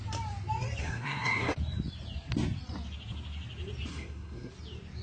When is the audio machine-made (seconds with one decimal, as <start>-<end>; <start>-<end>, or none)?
0.8-1.5; 3.9-4.5

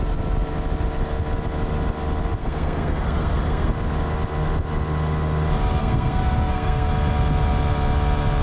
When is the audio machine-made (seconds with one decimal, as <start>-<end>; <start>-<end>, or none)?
2.4-3.7; 5.8-6.9

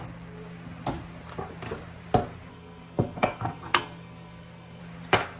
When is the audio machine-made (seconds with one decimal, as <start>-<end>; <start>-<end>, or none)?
2.5-4.8

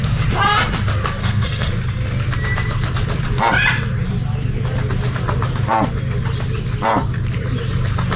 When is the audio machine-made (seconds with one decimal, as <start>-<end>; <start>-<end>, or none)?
1.2-1.7